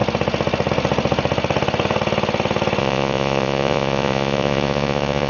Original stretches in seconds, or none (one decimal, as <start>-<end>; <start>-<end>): 0.0-2.8